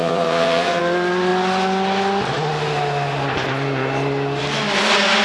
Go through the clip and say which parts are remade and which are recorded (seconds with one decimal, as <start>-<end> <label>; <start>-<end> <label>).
0.0-0.8 remade; 0.8-5.2 recorded